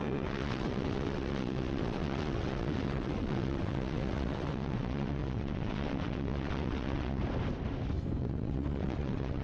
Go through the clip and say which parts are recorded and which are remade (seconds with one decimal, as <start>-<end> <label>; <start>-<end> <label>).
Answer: 0.0-7.2 remade; 7.2-8.2 recorded; 8.2-9.4 remade